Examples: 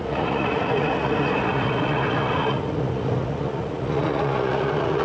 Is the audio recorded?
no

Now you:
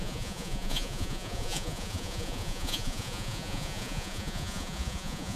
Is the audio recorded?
no